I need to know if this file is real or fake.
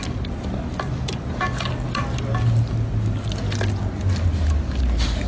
real